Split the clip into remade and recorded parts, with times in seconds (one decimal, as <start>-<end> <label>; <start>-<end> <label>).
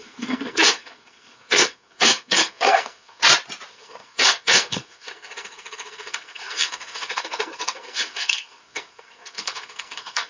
0.0-3.2 remade; 3.2-3.7 recorded; 3.7-10.3 remade